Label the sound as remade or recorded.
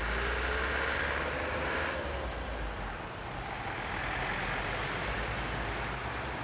recorded